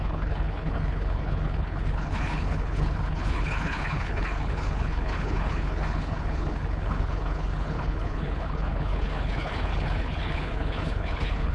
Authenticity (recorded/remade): remade